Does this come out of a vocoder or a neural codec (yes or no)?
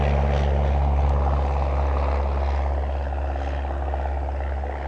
no